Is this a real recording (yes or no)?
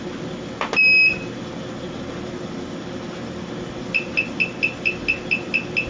yes